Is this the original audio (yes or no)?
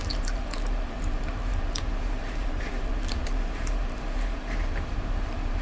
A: no